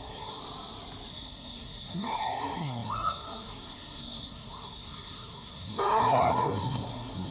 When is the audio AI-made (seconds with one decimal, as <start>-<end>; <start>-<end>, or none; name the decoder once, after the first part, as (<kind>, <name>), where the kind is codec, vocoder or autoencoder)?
0.0-0.4 (codec, SNAC); 1.1-7.3